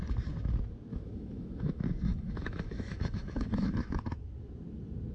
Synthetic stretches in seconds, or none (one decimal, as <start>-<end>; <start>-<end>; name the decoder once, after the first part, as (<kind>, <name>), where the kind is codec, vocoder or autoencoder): 0.9-4.0 (autoencoder, DAC-VAE)